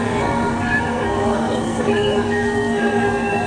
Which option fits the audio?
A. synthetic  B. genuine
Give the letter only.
A